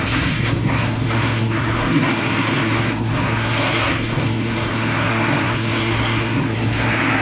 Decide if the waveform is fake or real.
fake